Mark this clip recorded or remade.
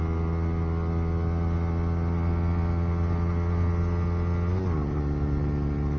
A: recorded